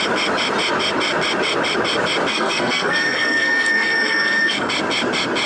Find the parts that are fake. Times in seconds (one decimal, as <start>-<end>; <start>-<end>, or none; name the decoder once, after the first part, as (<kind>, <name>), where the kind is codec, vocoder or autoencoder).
2.3-4.7 (codec, SNAC)